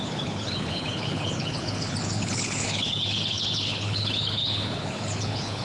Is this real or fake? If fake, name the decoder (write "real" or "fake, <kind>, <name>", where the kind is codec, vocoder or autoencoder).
fake, codec, HILCodec